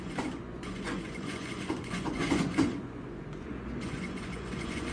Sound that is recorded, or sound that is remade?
remade